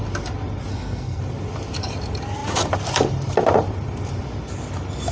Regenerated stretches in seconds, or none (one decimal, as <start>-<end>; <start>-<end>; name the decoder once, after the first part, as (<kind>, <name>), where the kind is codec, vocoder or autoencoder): 0.7-1.2 (codec, SNAC)